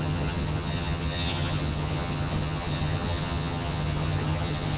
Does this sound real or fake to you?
fake